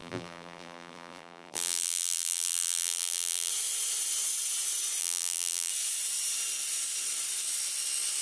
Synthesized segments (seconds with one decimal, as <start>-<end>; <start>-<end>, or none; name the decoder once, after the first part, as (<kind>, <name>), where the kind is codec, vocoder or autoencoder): 0.0-3.5 (vocoder, BigVGAN v2); 5.0-5.7